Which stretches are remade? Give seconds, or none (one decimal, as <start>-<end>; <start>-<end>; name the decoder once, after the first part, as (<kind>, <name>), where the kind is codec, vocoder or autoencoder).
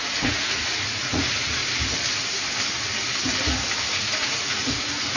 0.0-1.6 (vocoder, Vocos); 3.9-5.2